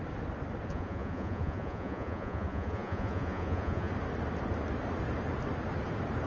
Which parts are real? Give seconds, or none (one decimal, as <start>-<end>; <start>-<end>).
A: 0.0-0.7; 3.9-6.3